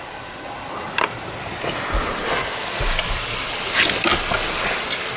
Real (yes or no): yes